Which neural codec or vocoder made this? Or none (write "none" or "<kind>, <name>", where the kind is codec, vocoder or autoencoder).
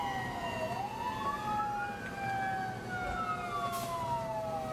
none